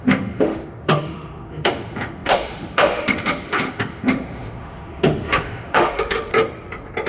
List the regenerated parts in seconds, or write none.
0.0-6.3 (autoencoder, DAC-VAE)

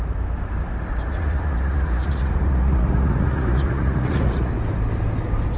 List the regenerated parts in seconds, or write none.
1.1-4.5 (vocoder, Vocos)